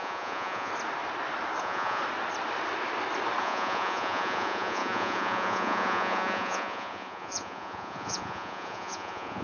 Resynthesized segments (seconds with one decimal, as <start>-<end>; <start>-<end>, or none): 0.0-0.7; 1.6-2.0; 3.4-9.4